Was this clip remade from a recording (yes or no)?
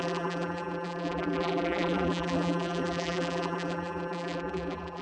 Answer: yes